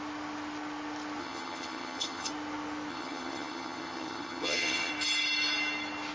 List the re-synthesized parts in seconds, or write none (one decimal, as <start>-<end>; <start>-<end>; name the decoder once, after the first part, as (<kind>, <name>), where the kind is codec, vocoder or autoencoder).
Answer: 1.2-2.3 (vocoder, HiFi-GAN); 2.9-4.9